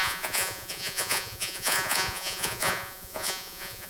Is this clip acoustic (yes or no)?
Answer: no